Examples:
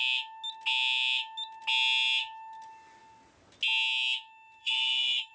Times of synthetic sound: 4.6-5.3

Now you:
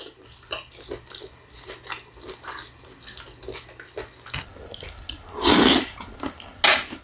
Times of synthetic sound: none

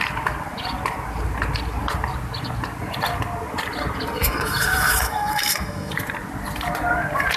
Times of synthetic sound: 4.2-5.9

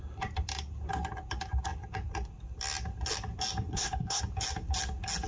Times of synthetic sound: 3.7-4.2